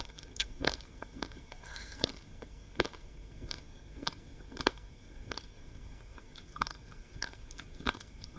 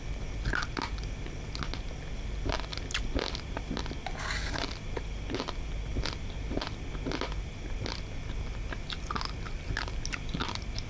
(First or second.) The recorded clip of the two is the second